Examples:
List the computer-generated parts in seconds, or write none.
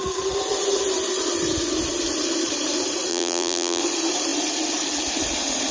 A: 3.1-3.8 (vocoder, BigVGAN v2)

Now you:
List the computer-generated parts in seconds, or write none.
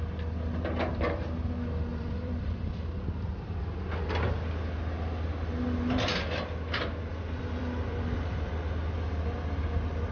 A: 0.9-1.5 (vocoder, BigVGAN v2); 1.9-3.6; 7.1-8.5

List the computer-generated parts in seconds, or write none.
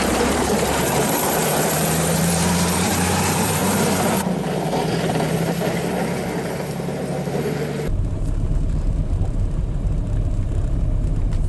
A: 0.0-11.5 (vocoder, BigVGAN v2)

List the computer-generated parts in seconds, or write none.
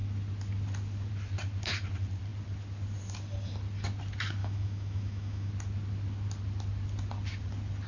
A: 4.4-5.5 (autoencoder, DAC-VAE)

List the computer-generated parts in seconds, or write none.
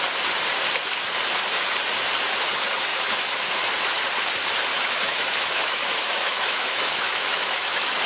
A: 2.9-3.5 (autoencoder, DAC-VAE); 4.7-8.1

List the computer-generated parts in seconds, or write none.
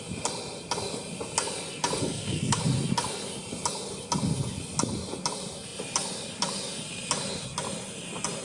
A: 2.0-2.6 (codec, SNAC)